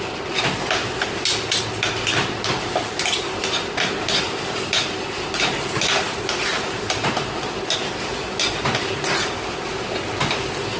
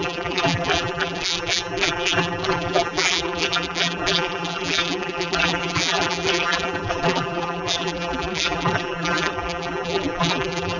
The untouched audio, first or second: first